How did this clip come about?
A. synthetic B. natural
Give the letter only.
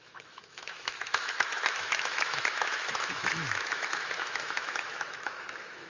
A